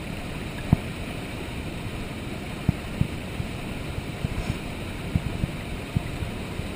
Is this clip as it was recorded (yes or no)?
no